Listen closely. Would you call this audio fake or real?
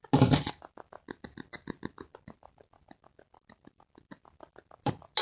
real